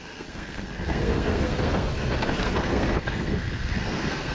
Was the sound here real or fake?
fake